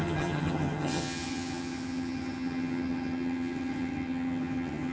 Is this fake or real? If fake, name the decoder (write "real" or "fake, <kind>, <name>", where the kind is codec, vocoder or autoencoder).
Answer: fake, vocoder, HiFi-GAN